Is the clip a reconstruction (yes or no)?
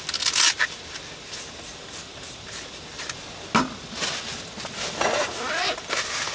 no